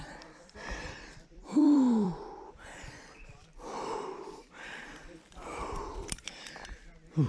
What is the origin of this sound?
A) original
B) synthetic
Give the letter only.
B